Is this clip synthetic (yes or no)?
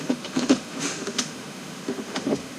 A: yes